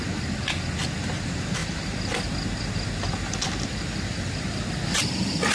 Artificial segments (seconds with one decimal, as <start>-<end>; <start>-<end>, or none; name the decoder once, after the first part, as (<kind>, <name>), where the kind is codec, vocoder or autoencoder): none